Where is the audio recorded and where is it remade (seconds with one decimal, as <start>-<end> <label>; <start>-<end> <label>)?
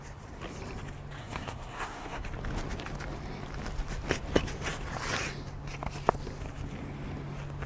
0.0-1.2 recorded; 1.2-2.2 remade; 2.2-7.7 recorded